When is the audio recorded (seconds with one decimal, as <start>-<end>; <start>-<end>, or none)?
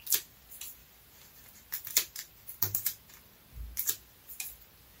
0.0-0.8; 3.3-5.0